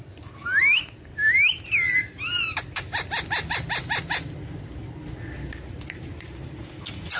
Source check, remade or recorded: recorded